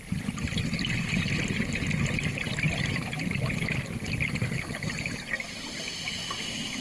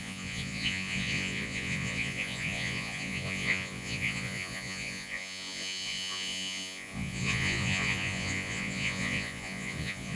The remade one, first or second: second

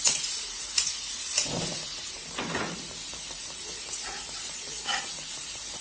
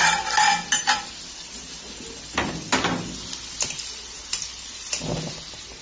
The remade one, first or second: first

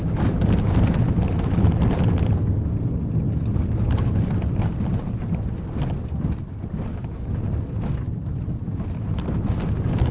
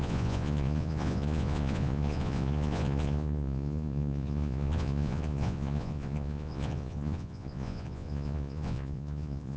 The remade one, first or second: second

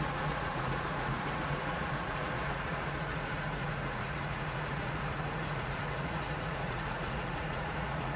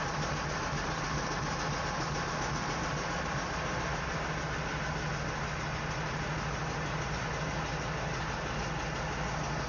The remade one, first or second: first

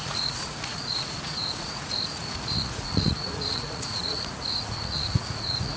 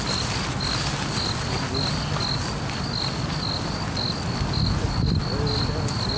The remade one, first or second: first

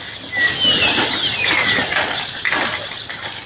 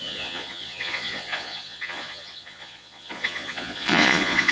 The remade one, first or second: second